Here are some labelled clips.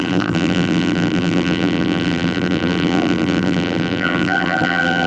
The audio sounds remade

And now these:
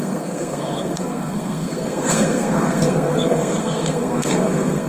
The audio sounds remade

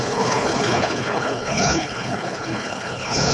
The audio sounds remade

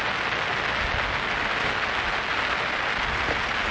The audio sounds recorded